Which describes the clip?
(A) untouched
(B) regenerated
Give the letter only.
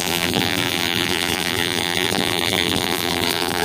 B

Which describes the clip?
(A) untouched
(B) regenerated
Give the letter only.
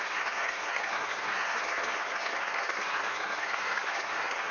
B